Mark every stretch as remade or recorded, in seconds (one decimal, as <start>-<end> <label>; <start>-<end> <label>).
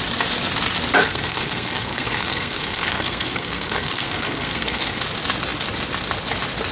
0.0-1.0 recorded; 1.0-5.0 remade; 5.0-6.7 recorded